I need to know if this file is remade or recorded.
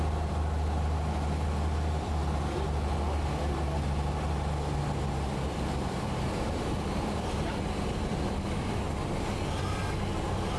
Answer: recorded